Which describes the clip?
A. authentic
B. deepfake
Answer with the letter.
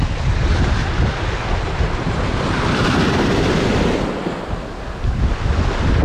A